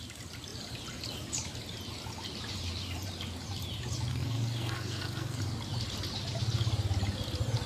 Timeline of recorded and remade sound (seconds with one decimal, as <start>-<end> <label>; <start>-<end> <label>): 0.0-4.1 recorded; 4.1-5.4 remade; 5.4-7.7 recorded